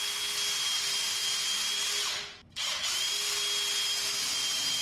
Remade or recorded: recorded